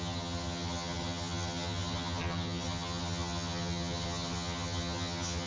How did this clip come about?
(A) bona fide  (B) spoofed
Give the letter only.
B